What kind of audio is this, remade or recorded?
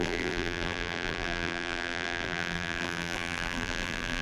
remade